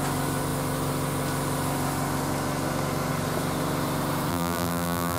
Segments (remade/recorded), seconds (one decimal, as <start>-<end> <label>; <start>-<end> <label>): 0.0-4.3 recorded; 4.3-5.2 remade